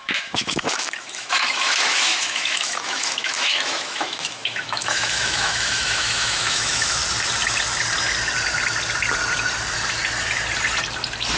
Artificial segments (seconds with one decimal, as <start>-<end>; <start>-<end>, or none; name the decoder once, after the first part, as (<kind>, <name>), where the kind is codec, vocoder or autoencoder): 0.0-7.0 (autoencoder, DAC-VAE)